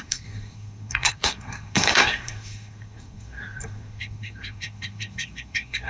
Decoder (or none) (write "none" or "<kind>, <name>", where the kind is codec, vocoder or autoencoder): codec, SNAC